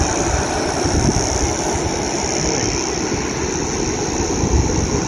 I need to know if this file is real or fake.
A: real